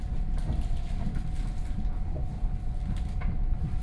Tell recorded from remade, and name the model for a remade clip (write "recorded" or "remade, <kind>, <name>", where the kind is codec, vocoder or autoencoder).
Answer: recorded